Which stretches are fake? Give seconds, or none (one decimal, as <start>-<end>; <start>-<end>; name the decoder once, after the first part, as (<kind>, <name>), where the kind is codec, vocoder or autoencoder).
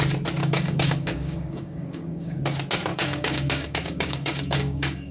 0.4-2.4 (codec, DAC); 2.9-5.1